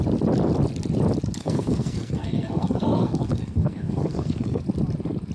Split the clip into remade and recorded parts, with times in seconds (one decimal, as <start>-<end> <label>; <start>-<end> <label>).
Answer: 0.0-1.4 recorded; 1.4-4.6 remade; 4.6-5.3 recorded